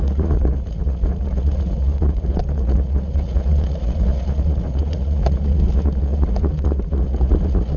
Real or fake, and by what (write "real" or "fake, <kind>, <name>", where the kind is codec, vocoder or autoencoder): fake, vocoder, Vocos